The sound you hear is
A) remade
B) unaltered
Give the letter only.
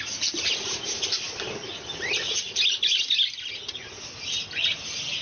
B